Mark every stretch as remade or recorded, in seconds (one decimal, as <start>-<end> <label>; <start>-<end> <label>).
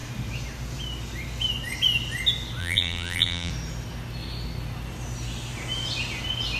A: 0.0-2.6 recorded; 2.6-3.5 remade; 3.5-6.6 recorded